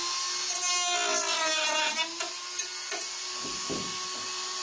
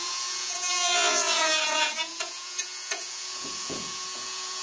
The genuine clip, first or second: first